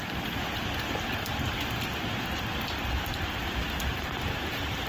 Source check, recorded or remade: recorded